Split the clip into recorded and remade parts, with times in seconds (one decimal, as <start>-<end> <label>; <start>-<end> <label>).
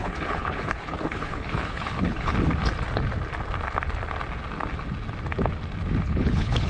0.0-2.3 remade; 2.3-6.1 recorded; 6.1-6.7 remade